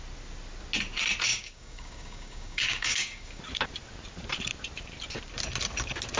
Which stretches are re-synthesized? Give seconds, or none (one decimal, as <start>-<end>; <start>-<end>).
1.3-3.4